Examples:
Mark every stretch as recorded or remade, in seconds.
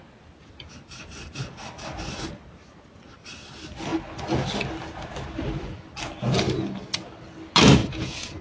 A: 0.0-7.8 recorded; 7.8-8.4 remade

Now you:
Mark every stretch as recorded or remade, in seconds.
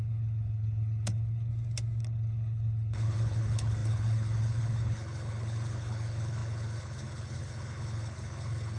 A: 0.0-1.5 remade; 1.5-2.0 recorded; 2.0-8.8 remade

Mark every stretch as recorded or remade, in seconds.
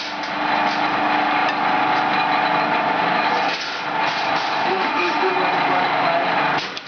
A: 0.0-4.7 recorded; 4.7-5.3 remade; 5.3-6.9 recorded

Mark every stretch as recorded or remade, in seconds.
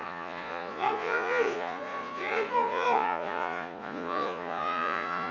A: 0.0-5.3 remade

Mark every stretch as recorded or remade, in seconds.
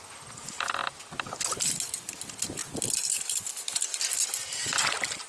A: 0.0-5.3 recorded